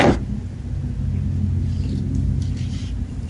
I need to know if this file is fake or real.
real